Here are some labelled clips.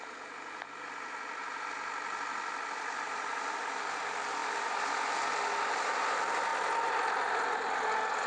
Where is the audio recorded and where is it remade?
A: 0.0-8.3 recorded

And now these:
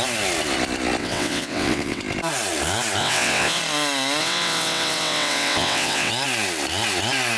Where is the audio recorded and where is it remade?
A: 0.0-1.0 recorded; 1.0-2.0 remade; 2.0-3.0 recorded; 3.0-3.6 remade; 3.6-4.2 recorded; 4.2-6.1 remade; 6.1-7.4 recorded

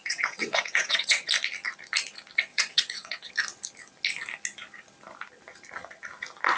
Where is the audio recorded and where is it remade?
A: 0.0-1.3 remade; 1.3-2.5 recorded; 2.5-3.3 remade; 3.3-6.6 recorded

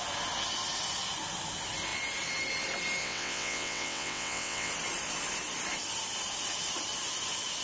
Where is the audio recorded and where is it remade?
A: 0.0-3.0 recorded; 3.0-4.7 remade; 4.7-7.6 recorded

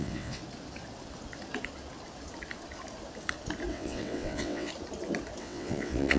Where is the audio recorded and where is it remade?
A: 0.0-0.4 remade; 0.4-3.7 recorded; 3.7-4.7 remade; 4.7-5.4 recorded; 5.4-6.2 remade

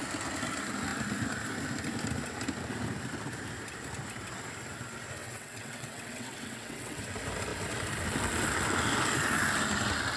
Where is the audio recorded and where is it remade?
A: 0.0-5.2 recorded; 5.2-7.0 remade; 7.0-10.2 recorded